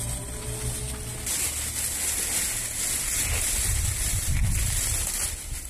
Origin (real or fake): real